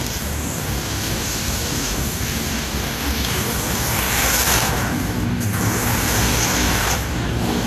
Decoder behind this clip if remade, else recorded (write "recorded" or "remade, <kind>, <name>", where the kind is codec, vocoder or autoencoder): remade, codec, DAC